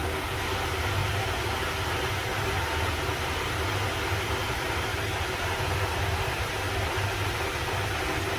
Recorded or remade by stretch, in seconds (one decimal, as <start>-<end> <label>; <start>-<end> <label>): 0.0-2.3 recorded; 2.3-2.9 remade; 2.9-4.9 recorded; 4.9-5.7 remade; 5.7-8.4 recorded